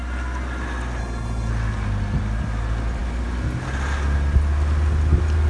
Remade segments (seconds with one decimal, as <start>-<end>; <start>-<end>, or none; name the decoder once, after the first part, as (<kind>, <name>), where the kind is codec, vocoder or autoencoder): 1.0-1.5 (codec, HILCodec)